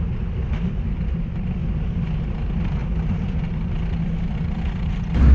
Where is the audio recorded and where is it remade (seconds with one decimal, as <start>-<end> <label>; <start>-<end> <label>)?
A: 0.0-1.6 remade; 1.6-2.2 recorded; 2.2-5.3 remade